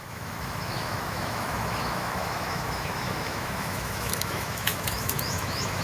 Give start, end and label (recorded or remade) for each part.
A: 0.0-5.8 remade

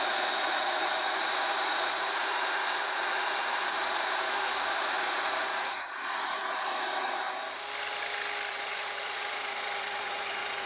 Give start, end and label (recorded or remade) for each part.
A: 0.0-7.2 remade; 7.2-8.5 recorded; 8.5-10.7 remade